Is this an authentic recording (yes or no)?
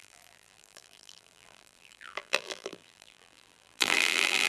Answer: no